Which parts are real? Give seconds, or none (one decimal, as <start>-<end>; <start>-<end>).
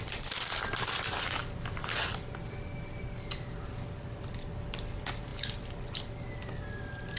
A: 0.0-7.2